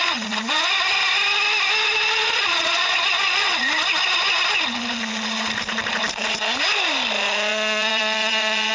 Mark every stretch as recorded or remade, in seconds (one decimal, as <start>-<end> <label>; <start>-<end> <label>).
0.0-0.5 remade; 0.5-2.2 recorded; 2.2-3.6 remade; 3.6-7.5 recorded; 7.5-8.7 remade